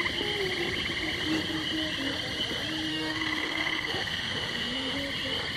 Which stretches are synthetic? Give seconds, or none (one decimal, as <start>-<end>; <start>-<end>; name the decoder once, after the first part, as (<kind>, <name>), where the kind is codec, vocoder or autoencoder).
2.9-4.9 (autoencoder, DAC-VAE)